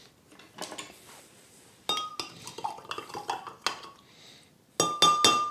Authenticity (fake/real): real